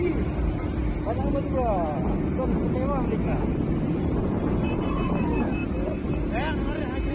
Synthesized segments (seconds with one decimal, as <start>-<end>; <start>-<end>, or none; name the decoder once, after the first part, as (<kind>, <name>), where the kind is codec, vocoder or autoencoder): 0.0-0.8 (vocoder, BigVGAN v2); 3.7-5.6